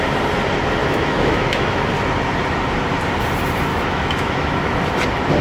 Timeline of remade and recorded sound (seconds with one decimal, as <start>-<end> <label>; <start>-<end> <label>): 0.0-0.8 recorded; 0.8-1.9 remade; 1.9-3.7 recorded; 3.7-4.8 remade; 4.8-5.4 recorded